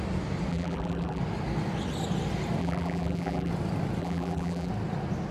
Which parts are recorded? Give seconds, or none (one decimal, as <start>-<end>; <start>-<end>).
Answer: 0.0-0.5; 1.2-2.6; 3.5-4.0; 4.7-5.3